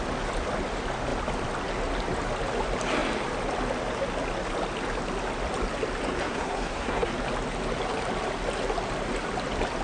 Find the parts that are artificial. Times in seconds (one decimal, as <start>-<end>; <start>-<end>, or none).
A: 6.2-7.1